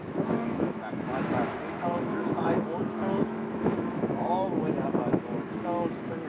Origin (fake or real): fake